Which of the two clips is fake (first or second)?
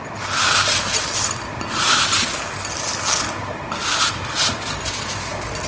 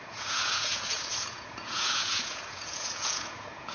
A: second